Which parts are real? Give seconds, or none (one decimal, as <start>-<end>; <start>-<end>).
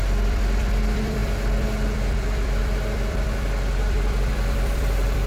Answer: none